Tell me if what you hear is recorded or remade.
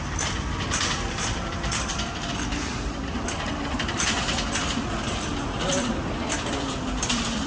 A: remade